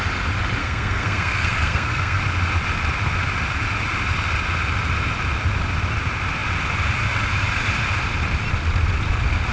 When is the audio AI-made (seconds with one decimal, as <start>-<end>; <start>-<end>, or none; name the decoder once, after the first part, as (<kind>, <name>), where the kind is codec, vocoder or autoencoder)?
0.6-2.2 (codec, SNAC)